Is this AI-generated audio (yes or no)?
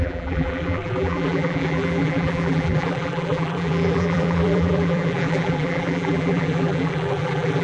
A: yes